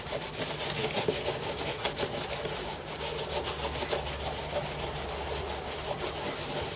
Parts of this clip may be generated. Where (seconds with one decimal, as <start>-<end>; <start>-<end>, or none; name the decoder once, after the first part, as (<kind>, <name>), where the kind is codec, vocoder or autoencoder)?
0.8-1.5 (codec, DAC); 2.6-3.2